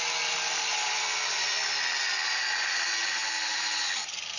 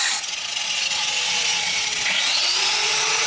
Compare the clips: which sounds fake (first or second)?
second